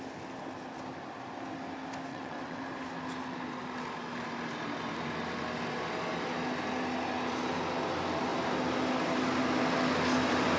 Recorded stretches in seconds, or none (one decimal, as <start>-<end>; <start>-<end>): 0.0-2.1; 2.6-10.6